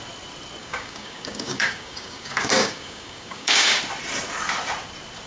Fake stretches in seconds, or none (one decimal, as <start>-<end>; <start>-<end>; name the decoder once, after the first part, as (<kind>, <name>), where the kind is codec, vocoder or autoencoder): 0.6-3.8 (codec, DAC)